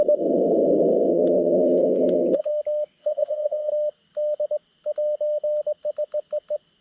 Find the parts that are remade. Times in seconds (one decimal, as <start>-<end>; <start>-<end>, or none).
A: 1.1-2.5; 3.0-3.7